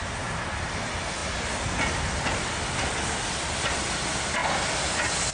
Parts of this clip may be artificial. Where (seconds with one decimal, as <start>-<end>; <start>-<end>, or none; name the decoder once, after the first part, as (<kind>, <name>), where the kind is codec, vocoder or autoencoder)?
none